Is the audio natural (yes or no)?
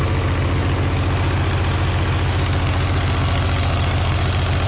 yes